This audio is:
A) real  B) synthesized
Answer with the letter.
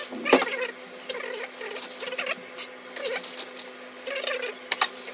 A